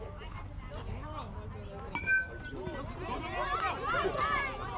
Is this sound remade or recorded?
recorded